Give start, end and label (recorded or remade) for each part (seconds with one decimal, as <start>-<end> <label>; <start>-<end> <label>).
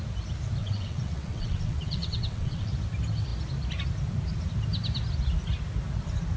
0.0-0.6 recorded; 0.6-2.7 remade; 2.7-6.4 recorded